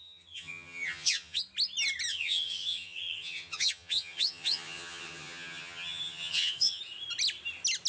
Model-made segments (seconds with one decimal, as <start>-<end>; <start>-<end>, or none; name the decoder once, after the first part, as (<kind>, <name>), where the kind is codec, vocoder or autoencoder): 0.0-1.4 (vocoder, HiFi-GAN); 2.1-6.8